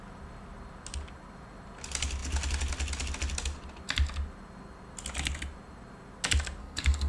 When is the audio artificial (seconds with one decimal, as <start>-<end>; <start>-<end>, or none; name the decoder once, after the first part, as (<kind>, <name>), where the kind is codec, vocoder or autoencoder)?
6.6-7.1 (codec, SNAC)